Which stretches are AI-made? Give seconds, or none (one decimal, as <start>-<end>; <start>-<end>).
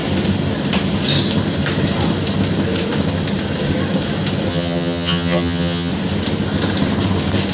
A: 4.5-5.9